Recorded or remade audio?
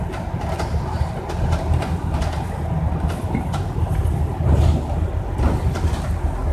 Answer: recorded